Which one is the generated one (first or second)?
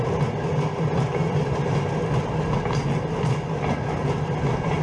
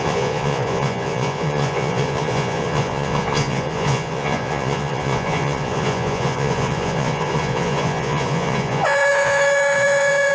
second